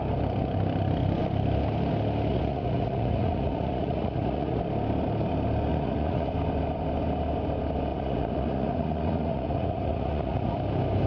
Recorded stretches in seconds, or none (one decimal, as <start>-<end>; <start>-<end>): 0.0-2.3; 4.6-5.7; 6.3-7.9; 10.5-11.1